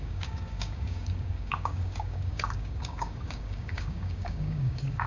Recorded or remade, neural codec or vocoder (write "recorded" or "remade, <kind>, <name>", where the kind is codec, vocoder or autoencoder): remade, codec, DAC